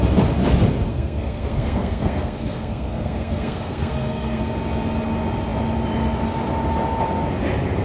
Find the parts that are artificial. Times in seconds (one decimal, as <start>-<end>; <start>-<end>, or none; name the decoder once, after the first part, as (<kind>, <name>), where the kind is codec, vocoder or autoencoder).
0.9-4.4 (codec, SNAC)